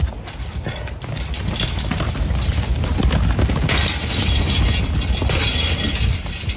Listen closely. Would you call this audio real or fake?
real